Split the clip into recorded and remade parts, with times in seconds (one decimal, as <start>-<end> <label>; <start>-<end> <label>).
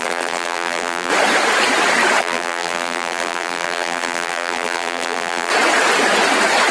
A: 0.0-1.1 remade; 1.1-2.2 recorded; 2.2-5.5 remade; 5.5-6.7 recorded